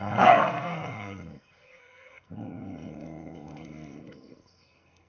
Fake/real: fake